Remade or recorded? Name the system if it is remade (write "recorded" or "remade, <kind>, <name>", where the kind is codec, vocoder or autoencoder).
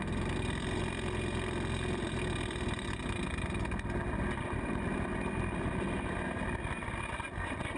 recorded